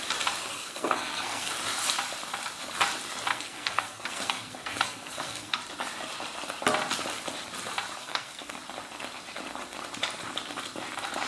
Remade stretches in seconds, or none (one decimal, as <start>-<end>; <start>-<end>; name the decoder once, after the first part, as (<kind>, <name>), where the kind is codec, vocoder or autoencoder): 0.4-1.5 (codec, SNAC); 3.3-5.6; 8.0-8.6